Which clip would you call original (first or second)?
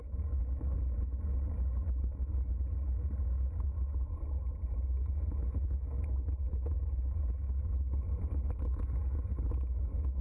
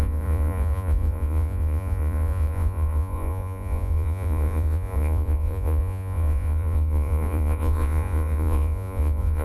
first